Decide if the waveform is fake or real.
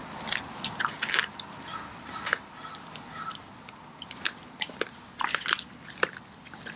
real